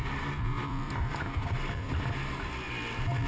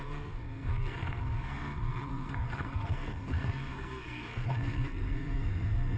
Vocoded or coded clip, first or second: second